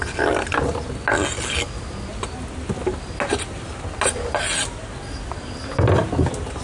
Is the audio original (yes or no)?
yes